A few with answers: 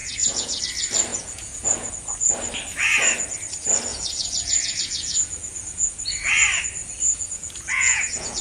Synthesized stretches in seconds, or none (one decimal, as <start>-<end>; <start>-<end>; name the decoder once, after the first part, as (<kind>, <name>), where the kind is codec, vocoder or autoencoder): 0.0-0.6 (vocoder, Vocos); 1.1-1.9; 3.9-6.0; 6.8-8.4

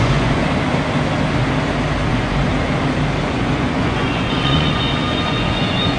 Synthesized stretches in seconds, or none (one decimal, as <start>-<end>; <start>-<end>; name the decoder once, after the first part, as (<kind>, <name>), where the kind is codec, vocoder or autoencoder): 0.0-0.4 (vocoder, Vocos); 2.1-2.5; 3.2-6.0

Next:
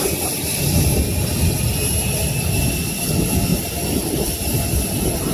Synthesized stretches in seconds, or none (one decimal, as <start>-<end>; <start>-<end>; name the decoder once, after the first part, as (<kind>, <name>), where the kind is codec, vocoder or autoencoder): 3.5-4.3 (vocoder, BigVGAN v2)

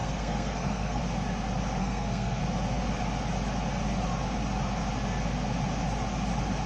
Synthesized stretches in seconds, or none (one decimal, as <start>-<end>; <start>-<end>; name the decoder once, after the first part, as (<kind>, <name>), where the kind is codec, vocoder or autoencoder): 0.0-1.0 (codec, SNAC); 1.8-2.4

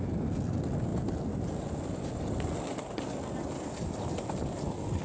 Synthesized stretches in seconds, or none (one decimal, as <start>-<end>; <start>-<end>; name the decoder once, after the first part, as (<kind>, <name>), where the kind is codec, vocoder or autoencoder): none

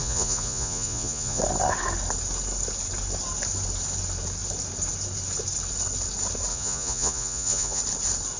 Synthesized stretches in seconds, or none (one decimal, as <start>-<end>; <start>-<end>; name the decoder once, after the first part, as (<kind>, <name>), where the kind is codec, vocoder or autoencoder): 0.0-1.4 (vocoder, Vocos); 6.5-7.8

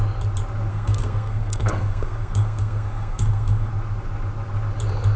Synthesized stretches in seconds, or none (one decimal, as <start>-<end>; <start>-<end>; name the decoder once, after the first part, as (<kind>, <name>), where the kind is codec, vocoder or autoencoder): 0.7-3.7 (codec, SNAC)

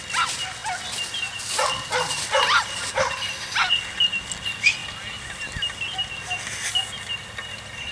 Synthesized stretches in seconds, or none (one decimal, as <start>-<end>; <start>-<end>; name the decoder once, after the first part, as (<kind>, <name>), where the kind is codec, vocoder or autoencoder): none